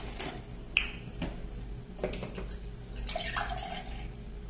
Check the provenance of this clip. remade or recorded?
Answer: recorded